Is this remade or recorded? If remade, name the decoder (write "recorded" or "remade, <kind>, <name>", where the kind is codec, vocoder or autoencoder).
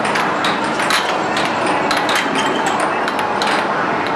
recorded